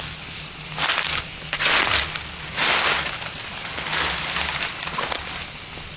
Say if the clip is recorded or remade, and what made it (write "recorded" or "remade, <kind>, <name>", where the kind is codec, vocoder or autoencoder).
recorded